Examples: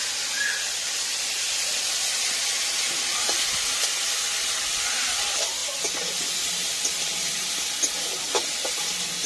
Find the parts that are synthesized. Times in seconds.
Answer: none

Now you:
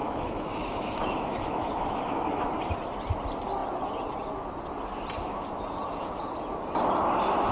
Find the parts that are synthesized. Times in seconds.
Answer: 0.0-2.5 (autoencoder, DAC-VAE)